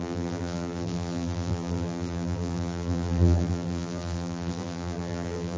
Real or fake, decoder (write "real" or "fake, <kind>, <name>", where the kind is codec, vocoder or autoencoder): fake, vocoder, BigVGAN v2